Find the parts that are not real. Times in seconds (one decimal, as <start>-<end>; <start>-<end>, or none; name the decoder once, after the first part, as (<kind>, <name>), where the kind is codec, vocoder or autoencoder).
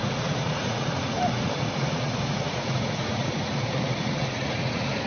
0.0-5.1 (vocoder, Vocos)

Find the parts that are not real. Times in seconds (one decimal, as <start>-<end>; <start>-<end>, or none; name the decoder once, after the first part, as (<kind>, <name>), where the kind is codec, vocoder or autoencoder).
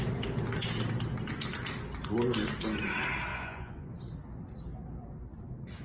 3.3-3.9 (vocoder, Vocos)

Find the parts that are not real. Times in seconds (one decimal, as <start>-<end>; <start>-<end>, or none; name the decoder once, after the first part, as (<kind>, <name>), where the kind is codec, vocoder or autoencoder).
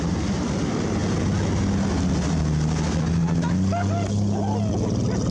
none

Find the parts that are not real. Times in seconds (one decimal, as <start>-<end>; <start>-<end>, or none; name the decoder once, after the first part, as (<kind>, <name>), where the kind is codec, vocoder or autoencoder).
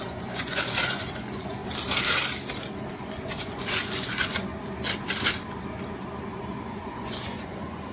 0.0-1.6 (vocoder, Vocos); 2.9-4.5; 6.6-7.9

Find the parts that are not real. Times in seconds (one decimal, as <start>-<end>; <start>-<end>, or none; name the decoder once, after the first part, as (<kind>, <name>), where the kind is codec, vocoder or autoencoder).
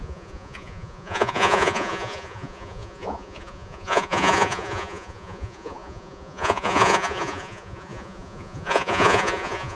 0.0-9.7 (vocoder, Vocos)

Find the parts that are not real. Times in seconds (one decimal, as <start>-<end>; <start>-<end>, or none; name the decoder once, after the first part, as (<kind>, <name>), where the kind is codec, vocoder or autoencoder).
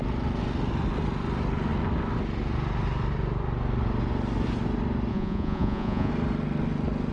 5.1-6.1 (vocoder, Vocos)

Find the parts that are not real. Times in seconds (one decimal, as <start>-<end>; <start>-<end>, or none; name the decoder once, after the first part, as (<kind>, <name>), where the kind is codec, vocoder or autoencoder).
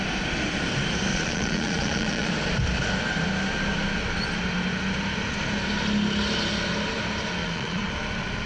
1.1-2.3 (vocoder, Vocos); 7.4-7.9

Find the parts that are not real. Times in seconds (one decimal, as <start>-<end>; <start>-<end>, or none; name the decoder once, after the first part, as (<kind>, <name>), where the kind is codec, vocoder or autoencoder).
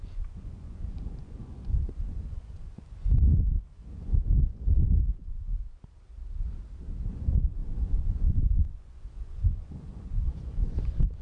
0.0-3.3 (vocoder, Vocos); 3.9-5.6; 7.1-11.2